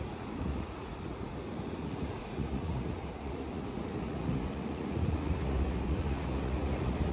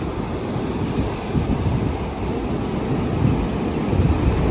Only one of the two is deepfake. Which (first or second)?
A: first